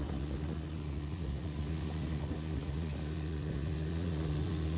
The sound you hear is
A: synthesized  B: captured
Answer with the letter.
A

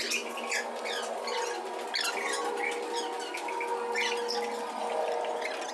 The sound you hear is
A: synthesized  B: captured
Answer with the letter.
B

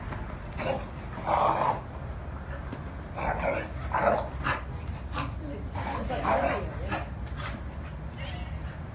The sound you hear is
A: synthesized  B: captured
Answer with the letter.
B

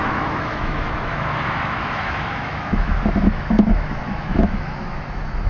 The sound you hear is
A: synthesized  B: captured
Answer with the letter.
A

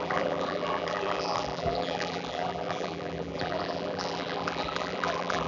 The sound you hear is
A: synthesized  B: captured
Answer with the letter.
A